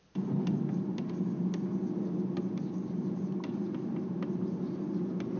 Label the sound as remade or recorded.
recorded